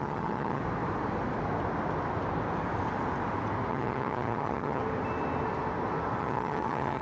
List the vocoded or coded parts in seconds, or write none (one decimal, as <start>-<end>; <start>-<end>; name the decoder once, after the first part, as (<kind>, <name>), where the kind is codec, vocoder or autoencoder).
0.0-0.6 (vocoder, HiFi-GAN); 3.7-4.8; 6.2-7.0